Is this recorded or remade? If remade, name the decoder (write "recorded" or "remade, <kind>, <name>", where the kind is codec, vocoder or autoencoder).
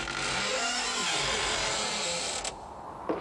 recorded